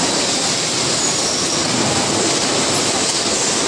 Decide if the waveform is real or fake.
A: real